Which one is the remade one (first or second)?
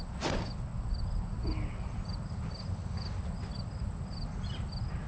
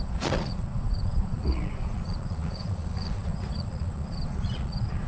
second